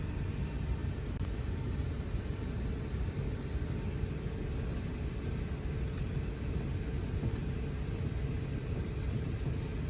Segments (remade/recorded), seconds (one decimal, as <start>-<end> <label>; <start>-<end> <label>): 0.0-0.8 recorded; 0.8-2.0 remade; 2.0-8.5 recorded; 8.5-9.9 remade